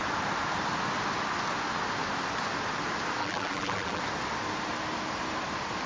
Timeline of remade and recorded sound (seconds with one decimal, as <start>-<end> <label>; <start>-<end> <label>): 0.0-3.2 recorded; 3.2-4.0 remade; 4.0-5.9 recorded